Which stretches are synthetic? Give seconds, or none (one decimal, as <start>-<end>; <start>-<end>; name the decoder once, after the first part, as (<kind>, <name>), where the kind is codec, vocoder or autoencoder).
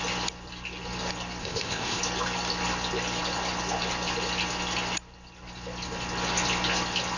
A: 1.4-2.0 (codec, ZipCodec)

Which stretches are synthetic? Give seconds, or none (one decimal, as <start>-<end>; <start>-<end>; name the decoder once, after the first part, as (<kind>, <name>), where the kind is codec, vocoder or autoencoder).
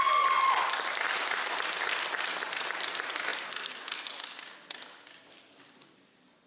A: none